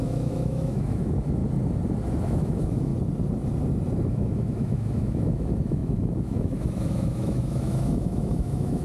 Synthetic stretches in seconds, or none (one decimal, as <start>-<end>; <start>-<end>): 0.0-1.4; 2.2-2.9; 4.1-8.8